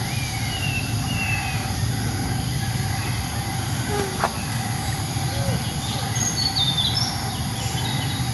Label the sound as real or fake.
real